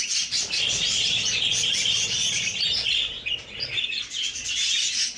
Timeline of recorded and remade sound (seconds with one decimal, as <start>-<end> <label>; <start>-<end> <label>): 0.0-5.2 recorded